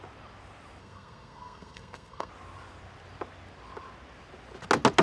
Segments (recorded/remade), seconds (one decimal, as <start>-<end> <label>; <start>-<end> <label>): 0.0-0.8 recorded; 0.8-2.3 remade; 2.3-5.0 recorded